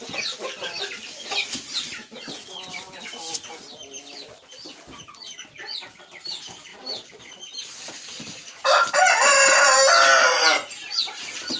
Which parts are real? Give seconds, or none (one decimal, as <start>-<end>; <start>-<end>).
0.0-6.7; 7.2-11.6